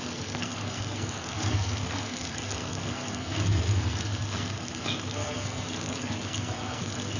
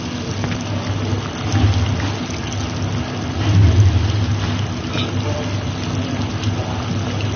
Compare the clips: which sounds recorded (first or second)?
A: second